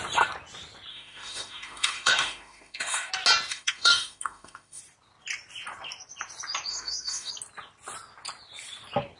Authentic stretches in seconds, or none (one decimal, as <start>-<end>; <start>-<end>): 0.0-0.9; 3.1-3.5; 4.8-6.7; 7.3-9.2